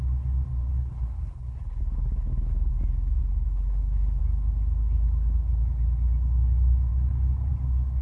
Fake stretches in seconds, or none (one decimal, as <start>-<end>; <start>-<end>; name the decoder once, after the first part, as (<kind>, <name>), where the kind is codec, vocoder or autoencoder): 0.7-2.7 (codec, HILCodec); 3.2-4.2; 6.9-7.5